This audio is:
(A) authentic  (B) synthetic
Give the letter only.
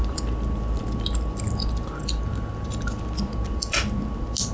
A